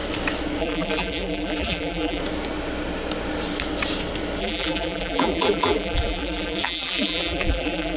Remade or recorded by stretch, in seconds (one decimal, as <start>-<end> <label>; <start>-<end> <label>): 0.0-0.6 recorded; 0.6-2.2 remade; 2.2-4.4 recorded; 4.4-8.0 remade